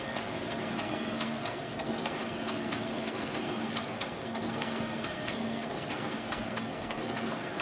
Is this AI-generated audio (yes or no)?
yes